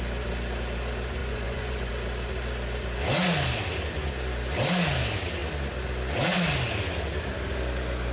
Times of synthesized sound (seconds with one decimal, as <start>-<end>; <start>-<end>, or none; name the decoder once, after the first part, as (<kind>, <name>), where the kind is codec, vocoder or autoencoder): 1.2-1.9 (vocoder, Vocos)